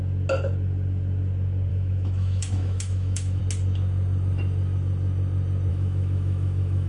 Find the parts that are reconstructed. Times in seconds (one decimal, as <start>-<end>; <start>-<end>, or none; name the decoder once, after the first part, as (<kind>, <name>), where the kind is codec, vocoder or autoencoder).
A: 1.7-3.4 (autoencoder, DAC-VAE); 5.7-6.9